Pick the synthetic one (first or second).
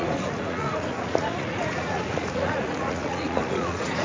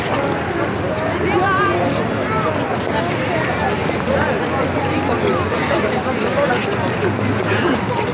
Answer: first